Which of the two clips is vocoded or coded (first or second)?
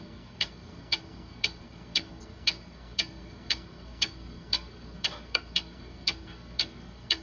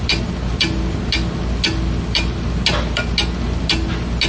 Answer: first